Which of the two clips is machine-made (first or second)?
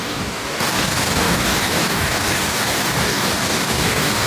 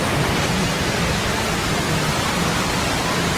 first